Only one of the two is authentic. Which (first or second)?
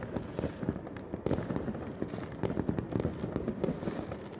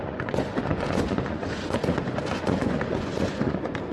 first